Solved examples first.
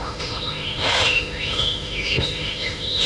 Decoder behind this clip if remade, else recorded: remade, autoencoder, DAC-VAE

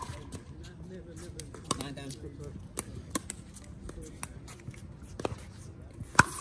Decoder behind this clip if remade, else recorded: recorded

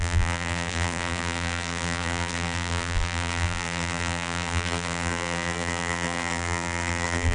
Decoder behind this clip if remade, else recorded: remade, vocoder, BigVGAN v2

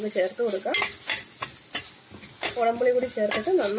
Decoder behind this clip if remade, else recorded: recorded